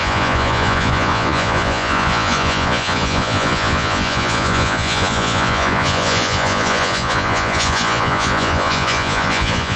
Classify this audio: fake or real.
fake